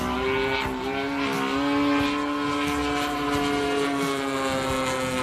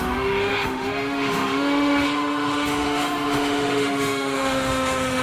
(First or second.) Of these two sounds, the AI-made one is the second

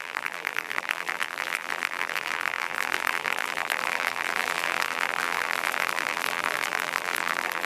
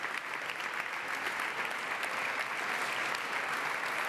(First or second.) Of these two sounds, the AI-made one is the first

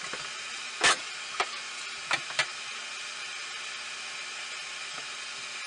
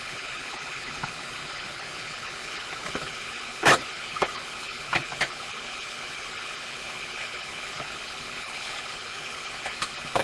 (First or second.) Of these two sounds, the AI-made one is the second